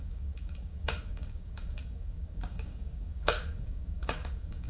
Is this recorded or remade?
remade